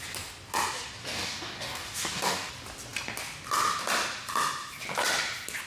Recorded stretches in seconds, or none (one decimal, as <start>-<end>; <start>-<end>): 0.0-1.0; 2.5-5.7